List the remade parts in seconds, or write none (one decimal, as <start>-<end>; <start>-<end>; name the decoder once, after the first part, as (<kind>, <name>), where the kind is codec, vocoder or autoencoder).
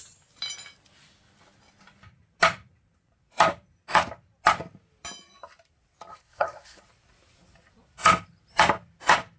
6.1-6.8 (codec, SNAC)